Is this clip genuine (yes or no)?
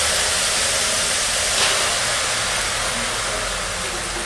yes